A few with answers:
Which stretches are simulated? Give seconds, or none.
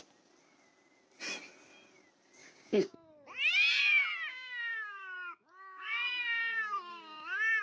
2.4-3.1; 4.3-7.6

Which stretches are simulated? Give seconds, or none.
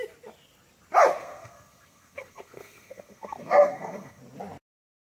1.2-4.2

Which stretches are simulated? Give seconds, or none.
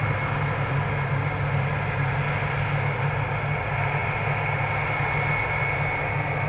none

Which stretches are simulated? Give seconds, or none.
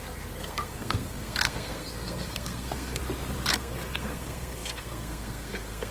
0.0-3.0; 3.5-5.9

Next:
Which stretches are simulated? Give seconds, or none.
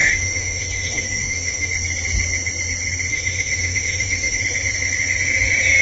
0.0-1.7; 3.1-4.4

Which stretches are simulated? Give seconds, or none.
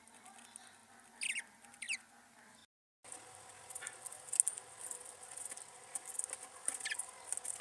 none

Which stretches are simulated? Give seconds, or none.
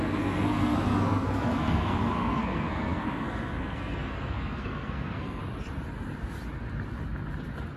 0.0-5.4